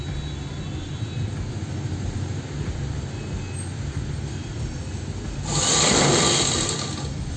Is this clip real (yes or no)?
yes